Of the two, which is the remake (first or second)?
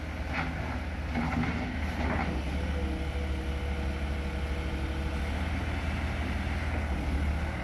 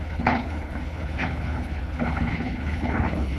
second